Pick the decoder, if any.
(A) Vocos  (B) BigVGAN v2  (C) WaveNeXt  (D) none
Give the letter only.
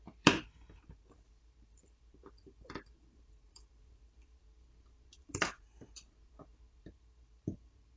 B